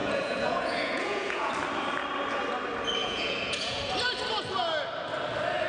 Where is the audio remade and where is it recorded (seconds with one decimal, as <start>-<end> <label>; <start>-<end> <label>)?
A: 0.0-1.5 remade; 1.5-3.0 recorded; 3.0-3.9 remade; 3.9-5.7 recorded